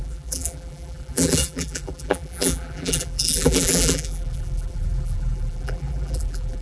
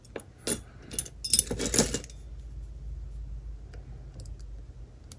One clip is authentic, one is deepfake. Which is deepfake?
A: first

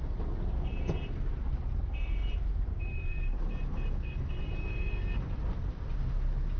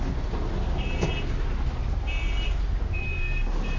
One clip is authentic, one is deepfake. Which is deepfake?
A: first